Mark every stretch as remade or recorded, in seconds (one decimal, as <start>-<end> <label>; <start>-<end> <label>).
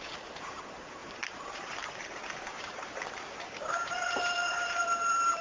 0.0-5.4 remade